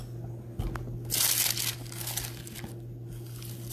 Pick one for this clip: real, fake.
real